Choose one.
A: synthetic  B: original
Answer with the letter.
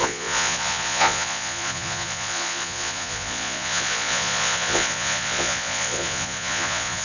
A